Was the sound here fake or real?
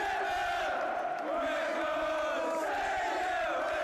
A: real